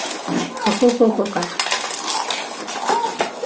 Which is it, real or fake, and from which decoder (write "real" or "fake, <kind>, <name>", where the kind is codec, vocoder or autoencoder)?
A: real